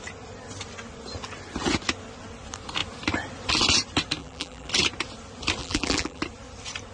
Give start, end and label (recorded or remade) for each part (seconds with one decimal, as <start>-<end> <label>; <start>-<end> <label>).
0.0-4.2 recorded; 4.2-4.7 remade; 4.7-5.6 recorded; 5.6-6.2 remade; 6.2-6.9 recorded